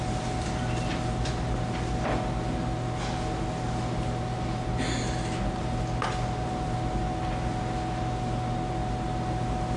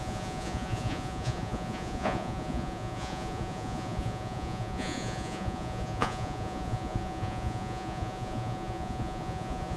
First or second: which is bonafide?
first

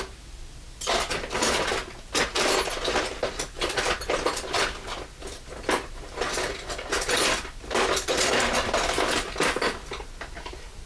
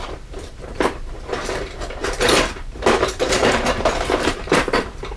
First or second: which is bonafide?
first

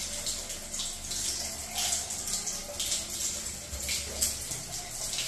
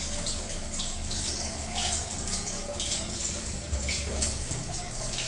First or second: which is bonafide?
first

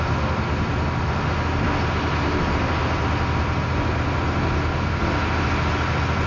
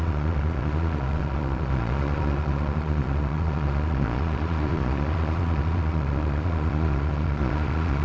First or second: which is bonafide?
first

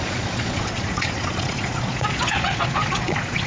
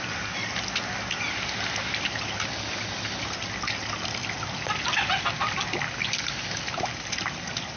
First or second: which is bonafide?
second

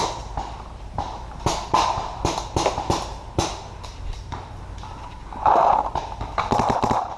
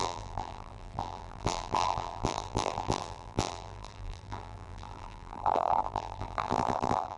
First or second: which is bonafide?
first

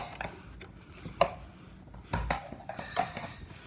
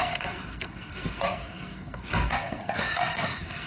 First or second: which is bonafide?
first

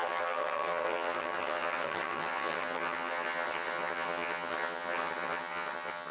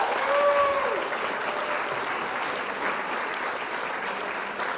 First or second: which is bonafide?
second